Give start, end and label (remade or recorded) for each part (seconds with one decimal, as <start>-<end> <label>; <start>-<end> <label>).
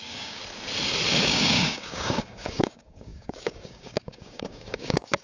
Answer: 0.0-0.4 remade; 0.4-1.2 recorded; 1.2-5.2 remade